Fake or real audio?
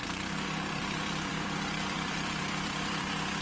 fake